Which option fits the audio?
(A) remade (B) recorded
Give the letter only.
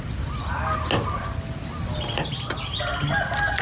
B